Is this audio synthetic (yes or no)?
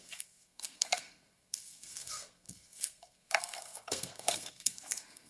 yes